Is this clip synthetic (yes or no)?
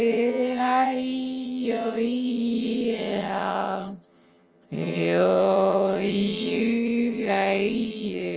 yes